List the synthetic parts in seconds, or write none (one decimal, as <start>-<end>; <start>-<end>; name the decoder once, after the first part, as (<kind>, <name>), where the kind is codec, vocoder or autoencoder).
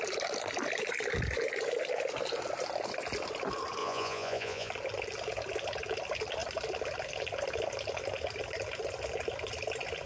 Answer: 3.8-4.7 (vocoder, Vocos)